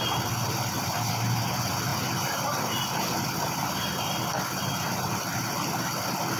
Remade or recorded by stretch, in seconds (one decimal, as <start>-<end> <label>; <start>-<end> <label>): 0.0-6.4 recorded